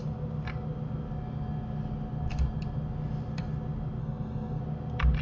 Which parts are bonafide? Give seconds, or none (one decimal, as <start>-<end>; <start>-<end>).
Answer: 0.0-4.0; 4.6-5.2